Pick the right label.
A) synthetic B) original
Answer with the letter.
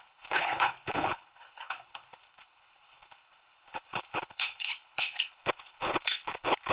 A